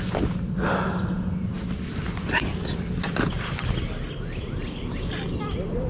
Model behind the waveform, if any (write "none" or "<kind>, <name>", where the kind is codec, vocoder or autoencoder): none